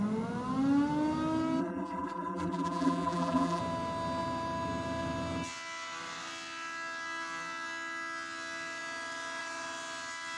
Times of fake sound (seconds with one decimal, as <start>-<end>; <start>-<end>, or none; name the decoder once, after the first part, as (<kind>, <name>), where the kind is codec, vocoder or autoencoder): 1.6-3.6 (vocoder, BigVGAN v2)